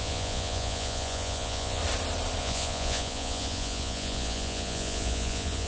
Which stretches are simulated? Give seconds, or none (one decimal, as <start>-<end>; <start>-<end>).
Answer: 0.0-1.8; 2.4-5.7